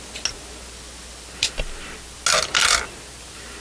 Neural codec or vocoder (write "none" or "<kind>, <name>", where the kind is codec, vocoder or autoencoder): none